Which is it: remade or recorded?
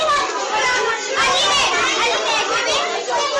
recorded